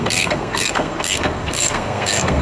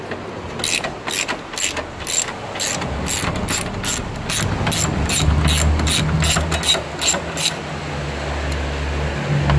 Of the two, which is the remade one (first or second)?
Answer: first